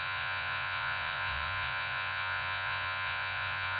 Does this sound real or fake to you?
fake